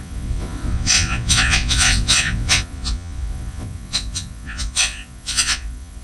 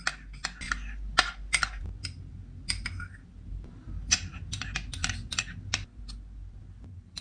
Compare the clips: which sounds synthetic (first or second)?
first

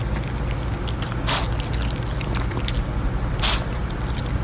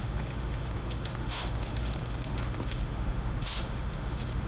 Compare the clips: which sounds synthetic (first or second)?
second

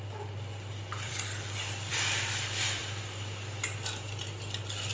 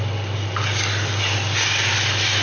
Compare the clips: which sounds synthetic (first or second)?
first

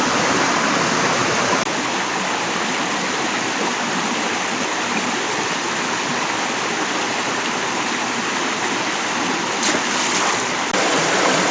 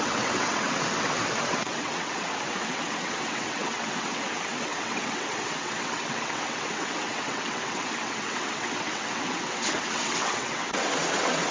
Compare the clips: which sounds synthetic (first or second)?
second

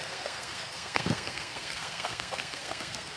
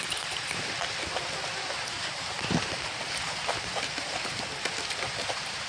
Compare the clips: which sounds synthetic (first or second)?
first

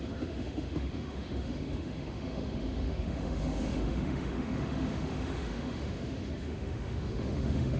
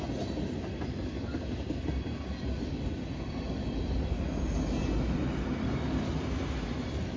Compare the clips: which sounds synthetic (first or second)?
first